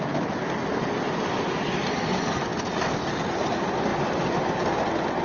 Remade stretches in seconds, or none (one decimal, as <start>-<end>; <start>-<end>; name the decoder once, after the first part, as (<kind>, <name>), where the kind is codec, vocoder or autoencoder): none